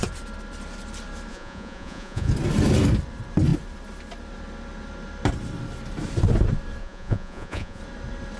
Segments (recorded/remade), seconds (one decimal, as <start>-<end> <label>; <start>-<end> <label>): 0.0-1.3 recorded; 1.3-2.3 remade; 2.3-6.8 recorded; 6.8-7.8 remade; 7.8-8.4 recorded